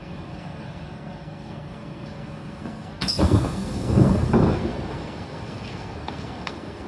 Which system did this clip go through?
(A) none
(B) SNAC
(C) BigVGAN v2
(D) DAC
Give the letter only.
B